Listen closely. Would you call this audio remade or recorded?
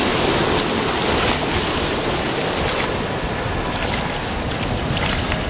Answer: recorded